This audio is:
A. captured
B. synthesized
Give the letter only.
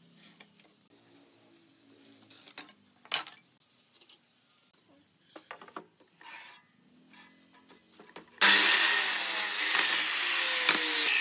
A